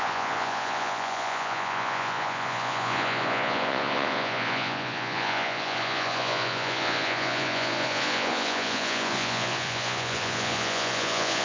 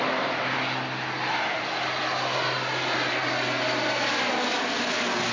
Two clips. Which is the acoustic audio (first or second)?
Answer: second